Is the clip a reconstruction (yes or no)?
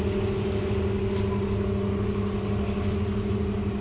no